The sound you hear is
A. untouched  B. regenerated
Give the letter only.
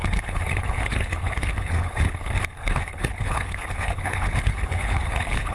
B